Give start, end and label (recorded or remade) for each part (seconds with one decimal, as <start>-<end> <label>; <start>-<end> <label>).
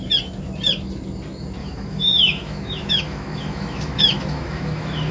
0.0-1.6 recorded; 1.6-5.1 remade